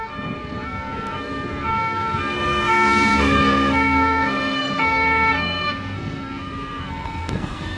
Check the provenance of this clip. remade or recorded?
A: remade